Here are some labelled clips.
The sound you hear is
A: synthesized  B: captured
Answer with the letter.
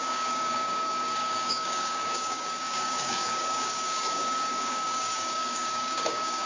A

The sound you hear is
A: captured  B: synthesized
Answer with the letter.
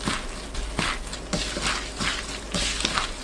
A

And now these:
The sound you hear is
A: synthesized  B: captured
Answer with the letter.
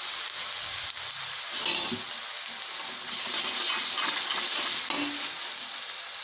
B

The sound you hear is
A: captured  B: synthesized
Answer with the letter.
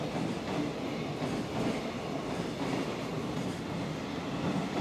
A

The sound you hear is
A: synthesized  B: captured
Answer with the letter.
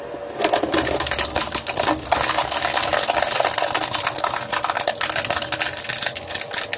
B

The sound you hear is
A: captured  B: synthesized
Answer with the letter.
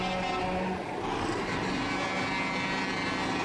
A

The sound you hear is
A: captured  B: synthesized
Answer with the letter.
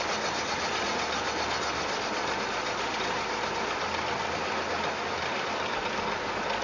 A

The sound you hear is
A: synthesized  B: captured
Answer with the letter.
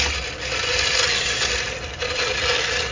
B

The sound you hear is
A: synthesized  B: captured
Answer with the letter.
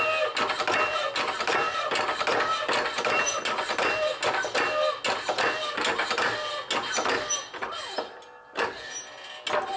B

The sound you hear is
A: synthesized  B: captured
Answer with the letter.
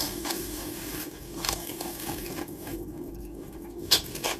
A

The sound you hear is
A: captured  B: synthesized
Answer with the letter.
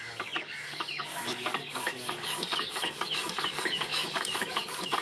B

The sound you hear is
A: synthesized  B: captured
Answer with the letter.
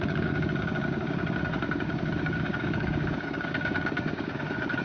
A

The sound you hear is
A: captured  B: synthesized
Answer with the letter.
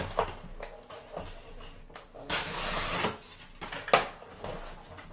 A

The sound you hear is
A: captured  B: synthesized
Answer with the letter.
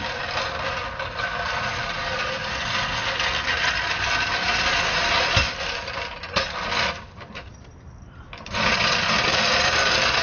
A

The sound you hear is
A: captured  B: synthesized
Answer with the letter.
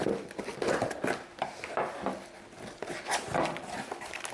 A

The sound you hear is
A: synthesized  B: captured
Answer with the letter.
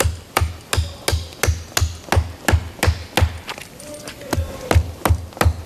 B